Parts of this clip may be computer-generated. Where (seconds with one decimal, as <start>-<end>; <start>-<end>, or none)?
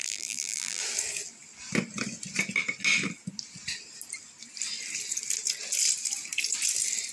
0.0-0.8